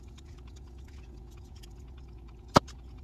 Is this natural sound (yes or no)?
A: no